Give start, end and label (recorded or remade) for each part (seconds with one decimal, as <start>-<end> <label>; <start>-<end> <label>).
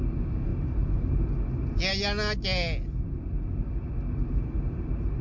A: 0.0-5.2 recorded